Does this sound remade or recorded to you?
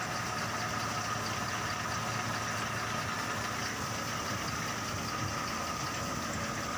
recorded